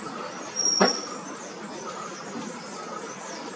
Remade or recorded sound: recorded